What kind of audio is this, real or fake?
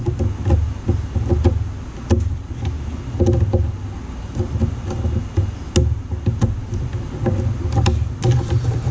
real